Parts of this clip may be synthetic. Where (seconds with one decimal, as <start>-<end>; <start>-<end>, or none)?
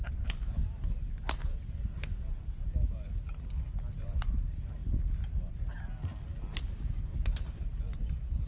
none